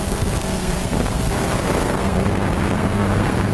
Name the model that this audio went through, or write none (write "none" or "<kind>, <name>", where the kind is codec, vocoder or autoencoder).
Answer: codec, SNAC